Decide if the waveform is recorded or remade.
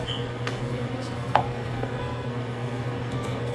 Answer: remade